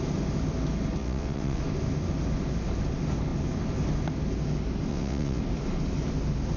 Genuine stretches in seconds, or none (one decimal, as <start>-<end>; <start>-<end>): 0.0-1.0; 1.6-4.9; 5.4-6.6